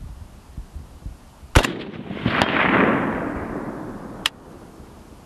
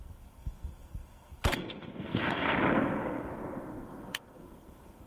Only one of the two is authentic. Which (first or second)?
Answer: first